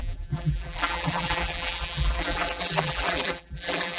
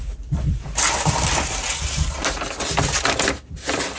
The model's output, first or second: first